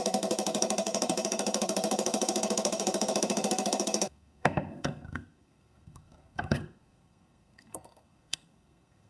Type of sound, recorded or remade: remade